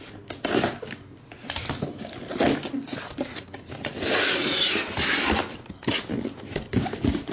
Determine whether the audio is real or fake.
real